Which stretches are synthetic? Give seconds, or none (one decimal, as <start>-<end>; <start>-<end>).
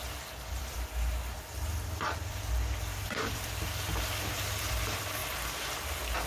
0.0-5.2